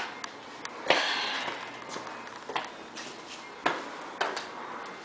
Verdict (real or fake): real